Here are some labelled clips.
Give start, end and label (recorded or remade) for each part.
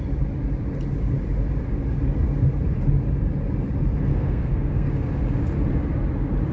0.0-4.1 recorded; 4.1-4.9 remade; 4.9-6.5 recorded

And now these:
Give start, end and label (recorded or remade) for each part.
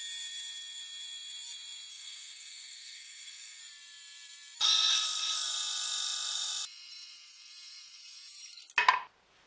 0.0-1.9 recorded; 1.9-3.6 remade; 3.6-9.5 recorded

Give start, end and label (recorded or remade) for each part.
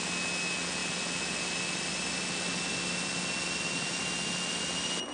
0.0-5.1 recorded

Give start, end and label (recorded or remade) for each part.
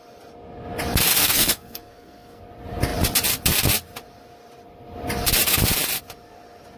0.0-1.2 recorded; 1.2-2.4 remade; 2.4-6.8 recorded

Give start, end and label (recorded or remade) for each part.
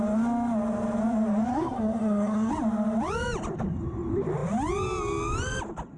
0.0-1.5 recorded; 1.5-2.5 remade; 2.5-6.0 recorded